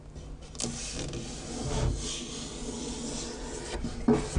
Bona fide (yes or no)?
yes